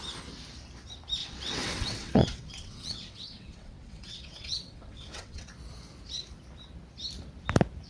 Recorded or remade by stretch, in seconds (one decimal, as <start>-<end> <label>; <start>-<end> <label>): 0.0-1.2 recorded; 1.2-5.5 remade; 5.5-7.9 recorded